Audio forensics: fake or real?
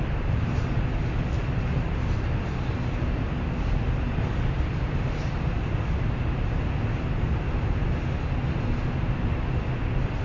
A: real